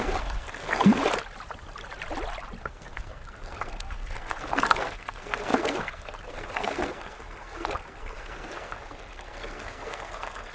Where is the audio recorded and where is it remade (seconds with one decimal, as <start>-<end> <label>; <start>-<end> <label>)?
0.0-1.0 remade; 1.0-2.6 recorded; 2.6-10.5 remade